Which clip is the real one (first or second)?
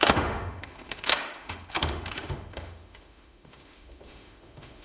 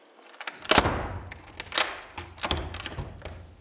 second